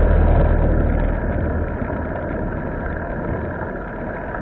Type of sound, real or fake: fake